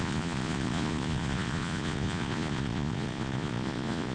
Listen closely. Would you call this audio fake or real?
fake